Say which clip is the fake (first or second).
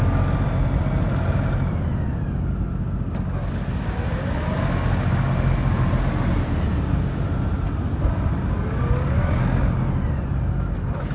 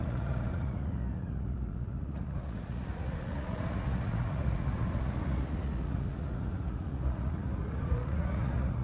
second